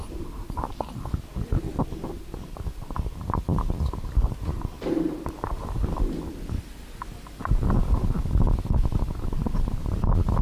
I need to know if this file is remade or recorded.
recorded